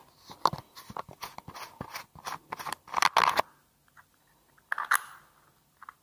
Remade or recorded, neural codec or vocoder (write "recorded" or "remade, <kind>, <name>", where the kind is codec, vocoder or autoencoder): recorded